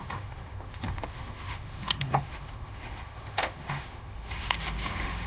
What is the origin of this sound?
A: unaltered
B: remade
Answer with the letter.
B